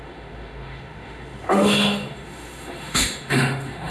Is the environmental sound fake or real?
fake